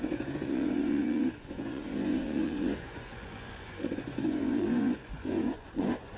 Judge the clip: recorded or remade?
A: remade